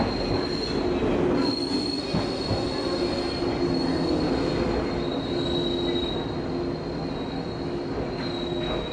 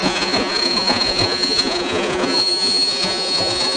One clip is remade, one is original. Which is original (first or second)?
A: first